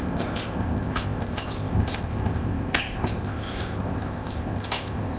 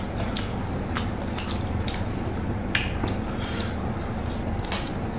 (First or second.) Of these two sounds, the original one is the second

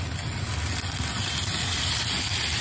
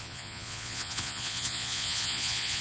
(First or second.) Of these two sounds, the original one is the first